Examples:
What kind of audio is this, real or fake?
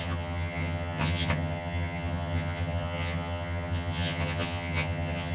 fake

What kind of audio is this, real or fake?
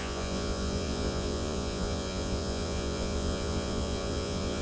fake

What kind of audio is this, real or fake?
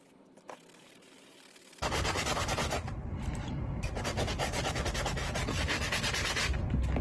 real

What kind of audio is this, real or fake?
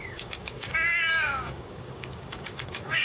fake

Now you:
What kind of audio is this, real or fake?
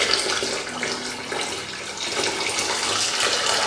real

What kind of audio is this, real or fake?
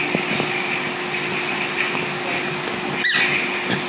real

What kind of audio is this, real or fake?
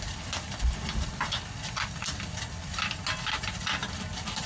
real